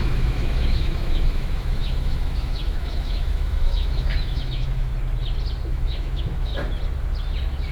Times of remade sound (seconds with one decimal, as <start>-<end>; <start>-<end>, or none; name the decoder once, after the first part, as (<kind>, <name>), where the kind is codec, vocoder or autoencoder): 0.0-4.9 (autoencoder, DAC-VAE); 5.7-6.5